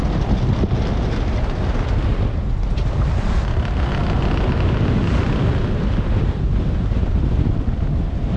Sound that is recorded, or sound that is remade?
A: recorded